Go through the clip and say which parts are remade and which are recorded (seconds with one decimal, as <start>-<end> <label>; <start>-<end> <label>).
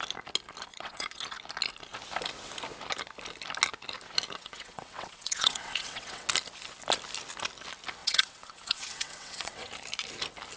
0.0-0.7 recorded; 0.7-1.2 remade; 1.2-4.4 recorded; 4.4-6.3 remade; 6.3-8.0 recorded; 8.0-9.7 remade; 9.7-10.6 recorded